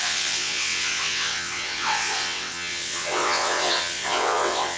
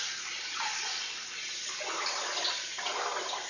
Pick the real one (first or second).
second